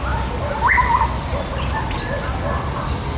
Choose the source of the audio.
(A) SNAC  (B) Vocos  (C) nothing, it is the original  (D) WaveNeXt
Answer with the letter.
C